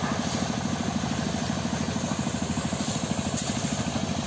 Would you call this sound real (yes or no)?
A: yes